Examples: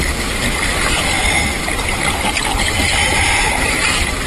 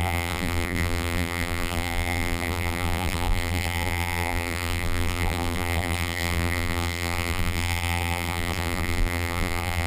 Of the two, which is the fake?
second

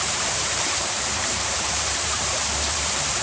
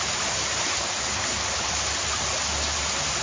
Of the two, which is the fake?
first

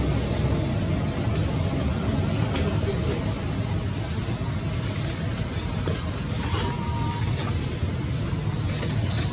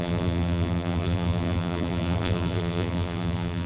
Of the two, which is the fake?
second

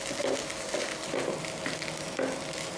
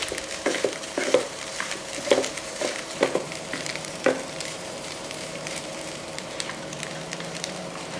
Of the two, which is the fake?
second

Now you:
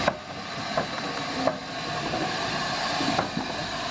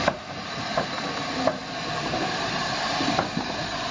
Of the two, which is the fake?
second